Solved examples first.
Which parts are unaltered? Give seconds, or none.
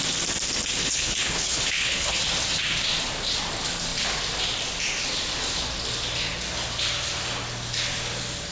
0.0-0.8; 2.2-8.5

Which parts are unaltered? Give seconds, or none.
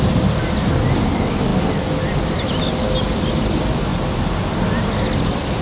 0.0-5.6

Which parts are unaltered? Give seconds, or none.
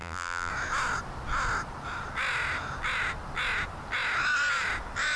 0.5-5.2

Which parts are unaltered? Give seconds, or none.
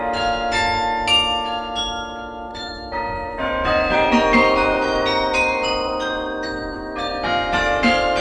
0.0-2.5; 7.1-8.2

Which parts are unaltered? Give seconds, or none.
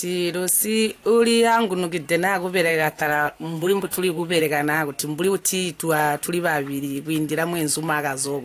0.0-2.7; 4.4-8.4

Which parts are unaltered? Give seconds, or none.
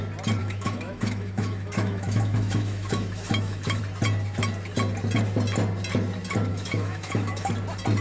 0.0-0.4; 3.8-6.5; 7.5-8.0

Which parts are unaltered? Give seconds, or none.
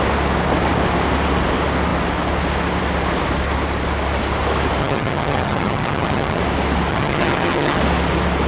0.0-4.8; 6.4-6.9; 7.8-8.5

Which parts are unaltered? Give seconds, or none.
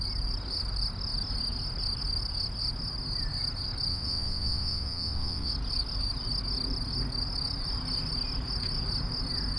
0.0-3.9; 5.5-9.6